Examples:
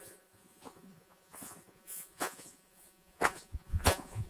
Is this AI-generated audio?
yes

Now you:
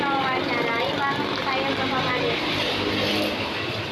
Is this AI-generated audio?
no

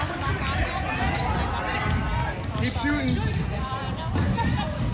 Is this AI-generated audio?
no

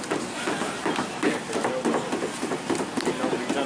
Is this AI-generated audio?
no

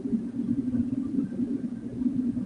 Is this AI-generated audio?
no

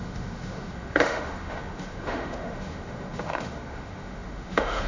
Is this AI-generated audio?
yes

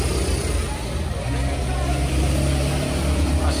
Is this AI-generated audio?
no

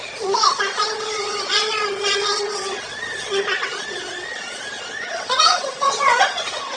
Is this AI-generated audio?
yes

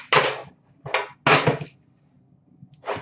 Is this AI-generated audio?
no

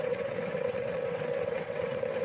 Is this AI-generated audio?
yes